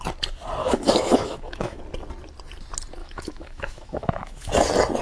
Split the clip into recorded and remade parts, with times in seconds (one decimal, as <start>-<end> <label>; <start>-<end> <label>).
0.0-0.6 recorded; 0.6-1.8 remade; 1.8-3.0 recorded; 3.0-4.5 remade; 4.5-5.0 recorded